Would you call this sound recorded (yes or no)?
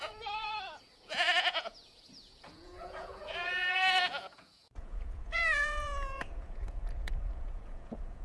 no